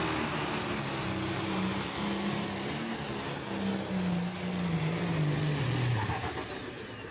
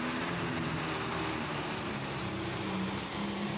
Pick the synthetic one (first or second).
second